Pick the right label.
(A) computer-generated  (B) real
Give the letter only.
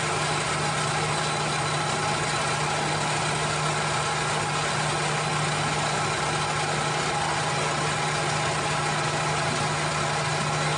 B